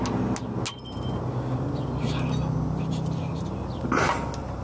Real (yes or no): yes